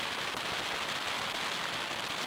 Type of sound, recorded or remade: recorded